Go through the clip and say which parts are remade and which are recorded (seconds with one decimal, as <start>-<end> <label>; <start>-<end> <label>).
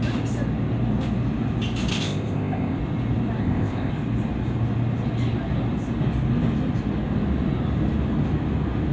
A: 0.0-1.9 recorded; 1.9-2.8 remade; 2.8-3.4 recorded; 3.4-3.9 remade; 3.9-8.9 recorded